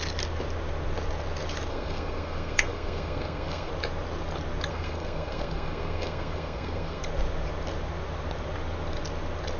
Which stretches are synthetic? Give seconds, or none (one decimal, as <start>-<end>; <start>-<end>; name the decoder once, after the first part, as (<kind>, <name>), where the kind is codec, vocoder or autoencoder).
1.7-3.7 (codec, SNAC); 4.7-7.0